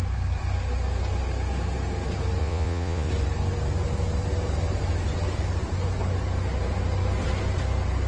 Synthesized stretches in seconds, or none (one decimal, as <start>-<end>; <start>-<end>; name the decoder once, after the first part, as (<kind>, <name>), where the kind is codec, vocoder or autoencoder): 2.4-3.1 (vocoder, Vocos)